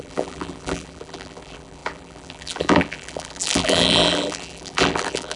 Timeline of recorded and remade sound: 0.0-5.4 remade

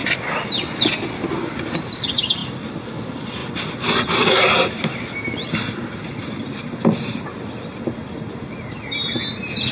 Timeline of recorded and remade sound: 0.0-2.4 recorded; 2.4-2.9 remade; 2.9-9.7 recorded

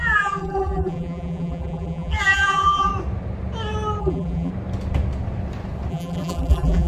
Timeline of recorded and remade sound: 0.0-2.9 remade; 2.9-4.0 recorded; 4.0-4.5 remade; 4.5-5.9 recorded; 5.9-6.9 remade